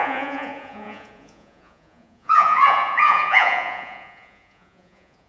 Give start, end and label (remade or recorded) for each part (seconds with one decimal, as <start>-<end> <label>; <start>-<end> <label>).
0.0-5.3 remade